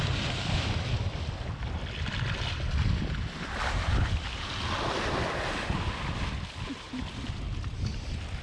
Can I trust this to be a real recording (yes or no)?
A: yes